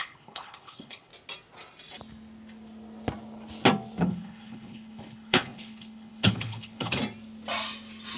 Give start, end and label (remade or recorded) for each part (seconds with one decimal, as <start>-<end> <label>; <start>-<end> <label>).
0.0-1.1 remade; 1.1-4.0 recorded; 4.0-7.0 remade; 7.0-8.2 recorded